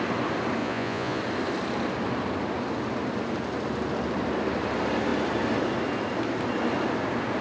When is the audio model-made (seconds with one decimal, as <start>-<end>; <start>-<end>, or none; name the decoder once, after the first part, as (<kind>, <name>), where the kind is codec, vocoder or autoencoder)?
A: 0.6-1.2 (vocoder, Vocos)